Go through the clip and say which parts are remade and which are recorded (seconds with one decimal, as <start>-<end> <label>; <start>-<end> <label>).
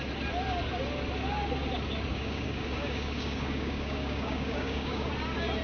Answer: 0.0-2.1 recorded; 2.1-5.1 remade; 5.1-5.6 recorded